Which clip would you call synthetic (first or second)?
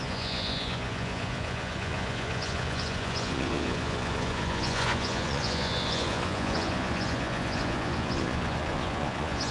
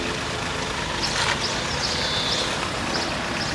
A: first